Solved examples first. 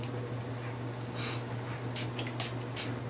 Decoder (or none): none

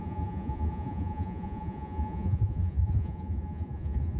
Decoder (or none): vocoder, Vocos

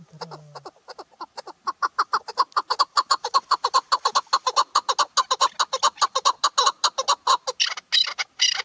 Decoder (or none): none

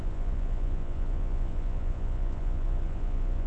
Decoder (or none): vocoder, Vocos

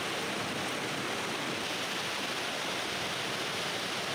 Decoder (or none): none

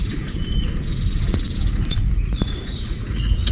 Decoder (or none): vocoder, Vocos